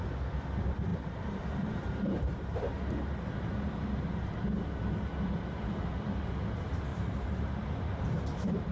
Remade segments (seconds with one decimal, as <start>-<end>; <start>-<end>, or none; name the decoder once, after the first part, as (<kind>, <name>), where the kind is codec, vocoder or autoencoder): 0.9-1.4 (vocoder, BigVGAN v2); 1.8-2.7; 6.9-7.5